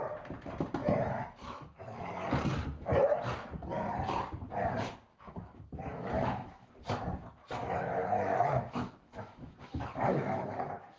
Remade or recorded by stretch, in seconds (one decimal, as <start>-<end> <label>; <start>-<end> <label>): 0.0-0.8 recorded; 0.8-2.1 remade; 2.1-5.1 recorded; 5.1-6.7 remade; 6.7-7.6 recorded; 7.6-11.0 remade